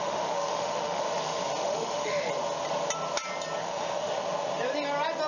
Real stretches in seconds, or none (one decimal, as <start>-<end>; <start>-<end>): 1.0-1.6; 2.3-3.6; 4.1-5.3